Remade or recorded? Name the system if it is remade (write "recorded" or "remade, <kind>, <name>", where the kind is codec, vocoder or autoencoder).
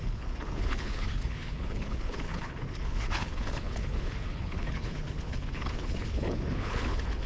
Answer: remade, codec, HILCodec